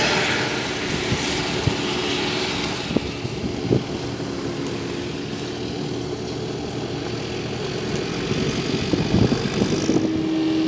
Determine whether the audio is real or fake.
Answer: real